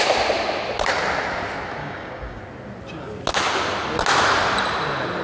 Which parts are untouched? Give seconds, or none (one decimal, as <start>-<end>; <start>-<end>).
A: 0.0-1.8; 2.4-5.2